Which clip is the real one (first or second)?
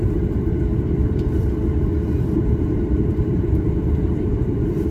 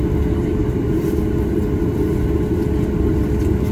second